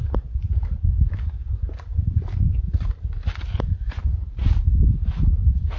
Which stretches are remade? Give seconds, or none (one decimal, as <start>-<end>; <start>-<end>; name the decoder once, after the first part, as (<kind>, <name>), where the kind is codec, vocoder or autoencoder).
0.0-5.8 (vocoder, BigVGAN v2)